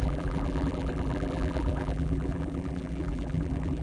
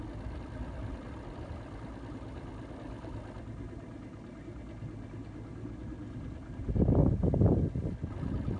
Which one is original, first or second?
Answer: second